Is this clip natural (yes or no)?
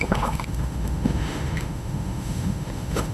no